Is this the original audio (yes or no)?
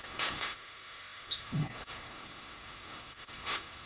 no